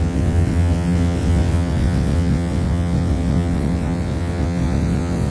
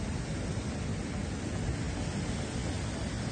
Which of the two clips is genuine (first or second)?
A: second